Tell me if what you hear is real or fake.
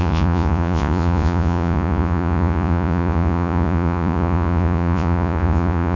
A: fake